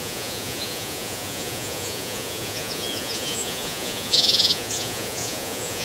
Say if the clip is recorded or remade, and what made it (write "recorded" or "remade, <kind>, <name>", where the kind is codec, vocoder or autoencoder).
remade, vocoder, Vocos